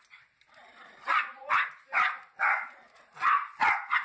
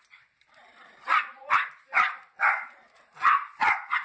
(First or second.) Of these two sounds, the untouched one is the first